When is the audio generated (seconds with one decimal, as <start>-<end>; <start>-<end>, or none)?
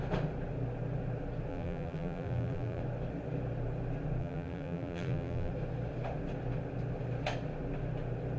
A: 1.5-2.8; 4.2-5.5